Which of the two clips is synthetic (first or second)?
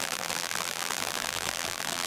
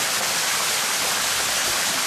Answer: first